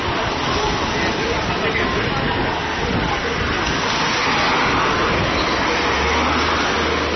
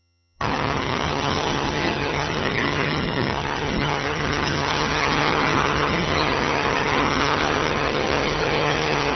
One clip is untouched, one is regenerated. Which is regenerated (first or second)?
second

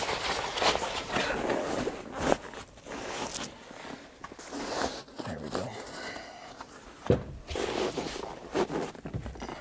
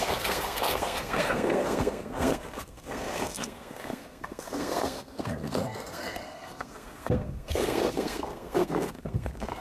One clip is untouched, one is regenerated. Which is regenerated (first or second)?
second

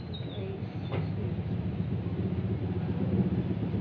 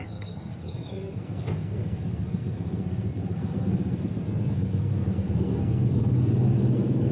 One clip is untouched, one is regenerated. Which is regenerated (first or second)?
second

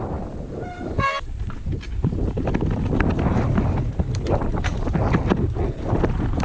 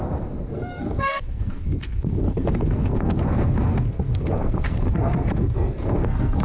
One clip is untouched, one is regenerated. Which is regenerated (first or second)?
second